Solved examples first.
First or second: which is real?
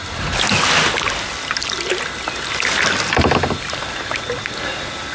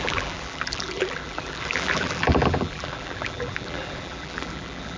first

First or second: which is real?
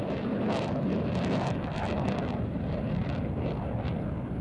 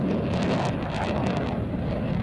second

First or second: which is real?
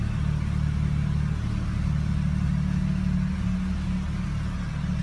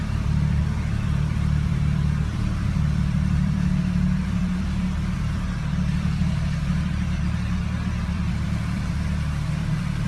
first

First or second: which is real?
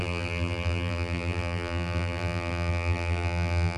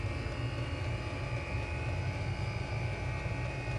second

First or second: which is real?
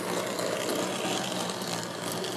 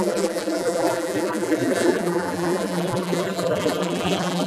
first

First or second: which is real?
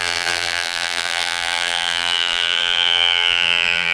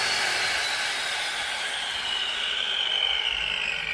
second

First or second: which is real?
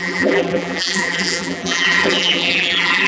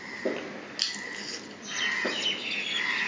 second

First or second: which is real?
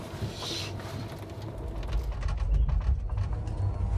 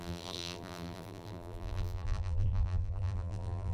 first